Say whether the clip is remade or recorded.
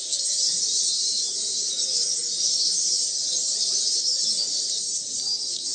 recorded